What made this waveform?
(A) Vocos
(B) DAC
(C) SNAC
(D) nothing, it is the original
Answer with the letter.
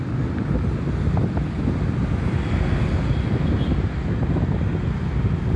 D